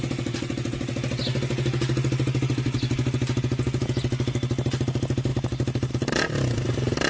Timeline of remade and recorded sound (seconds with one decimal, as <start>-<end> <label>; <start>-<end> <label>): 0.0-7.1 recorded